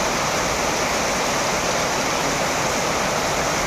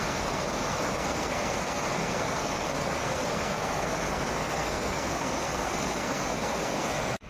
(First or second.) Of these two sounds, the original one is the first